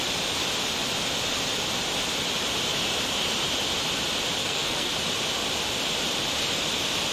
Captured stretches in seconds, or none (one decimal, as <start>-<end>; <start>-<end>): 0.0-4.4; 4.9-7.1